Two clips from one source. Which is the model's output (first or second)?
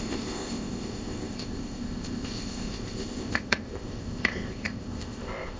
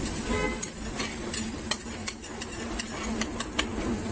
first